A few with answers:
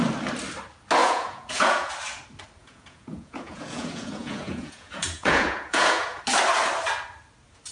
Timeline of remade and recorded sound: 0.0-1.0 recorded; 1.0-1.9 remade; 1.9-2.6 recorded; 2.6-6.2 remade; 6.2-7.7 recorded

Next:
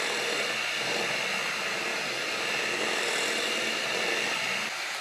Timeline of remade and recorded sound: 0.0-5.0 recorded

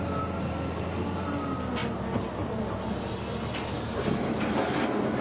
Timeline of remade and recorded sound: 0.0-5.2 recorded

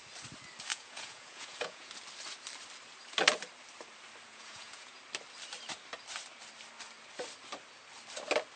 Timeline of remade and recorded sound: 0.0-0.7 recorded; 0.7-1.9 remade; 1.9-4.3 recorded; 4.3-5.0 remade; 5.0-8.6 recorded